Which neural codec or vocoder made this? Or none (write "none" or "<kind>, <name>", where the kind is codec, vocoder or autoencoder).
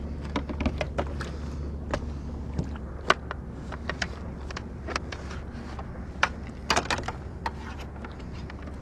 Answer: none